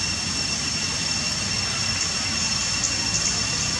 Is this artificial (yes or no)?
no